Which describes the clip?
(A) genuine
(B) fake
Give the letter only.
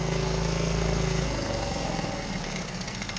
B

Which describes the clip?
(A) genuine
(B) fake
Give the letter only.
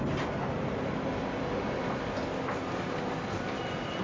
A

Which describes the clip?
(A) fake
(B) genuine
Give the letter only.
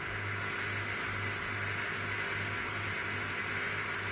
B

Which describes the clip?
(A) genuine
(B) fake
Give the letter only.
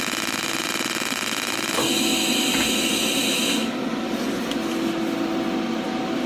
A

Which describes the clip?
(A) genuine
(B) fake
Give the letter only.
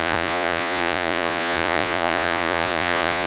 B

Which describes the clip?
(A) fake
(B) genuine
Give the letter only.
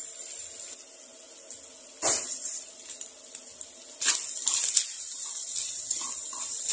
B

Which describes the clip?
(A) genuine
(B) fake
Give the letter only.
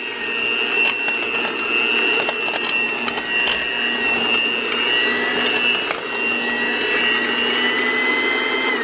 A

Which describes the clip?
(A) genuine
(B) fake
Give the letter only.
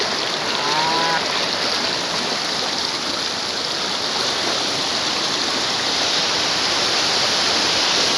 A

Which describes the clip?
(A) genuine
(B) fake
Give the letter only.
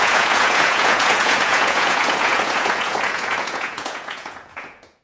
B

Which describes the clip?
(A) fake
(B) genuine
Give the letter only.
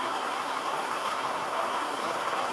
A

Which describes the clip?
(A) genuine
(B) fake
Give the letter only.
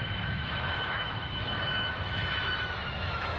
B